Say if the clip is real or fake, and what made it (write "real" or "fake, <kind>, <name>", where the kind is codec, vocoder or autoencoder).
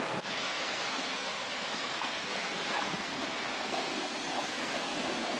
fake, codec, SNAC